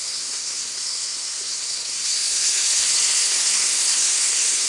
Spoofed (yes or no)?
yes